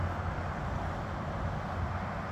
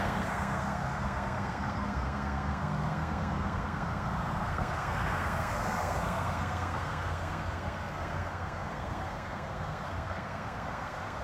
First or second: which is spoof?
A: second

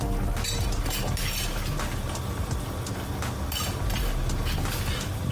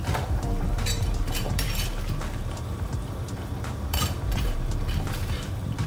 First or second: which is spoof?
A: second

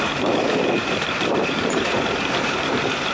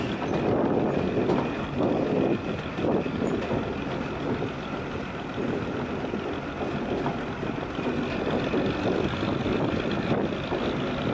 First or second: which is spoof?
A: first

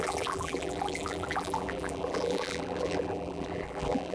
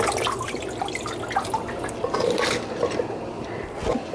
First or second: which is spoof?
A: first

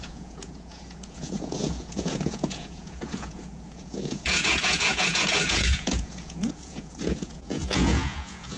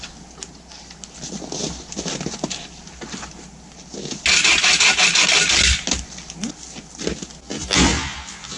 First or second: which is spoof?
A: first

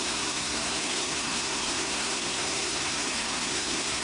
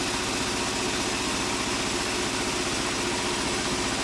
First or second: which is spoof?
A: first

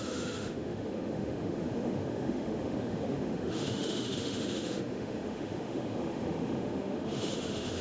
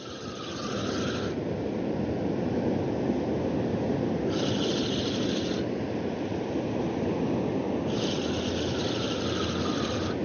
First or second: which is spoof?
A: first